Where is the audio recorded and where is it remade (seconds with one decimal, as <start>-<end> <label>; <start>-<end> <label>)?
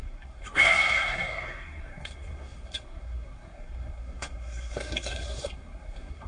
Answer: 0.0-6.3 remade